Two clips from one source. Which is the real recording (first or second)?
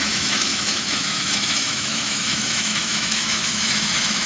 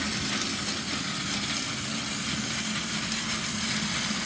second